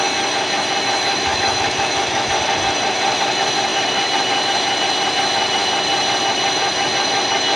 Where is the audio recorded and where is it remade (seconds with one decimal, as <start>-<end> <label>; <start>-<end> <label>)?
0.0-1.3 recorded; 1.3-2.3 remade; 2.3-7.6 recorded